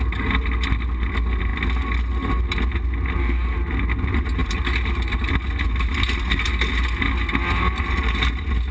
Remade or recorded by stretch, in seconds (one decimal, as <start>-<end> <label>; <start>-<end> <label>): 0.0-8.7 recorded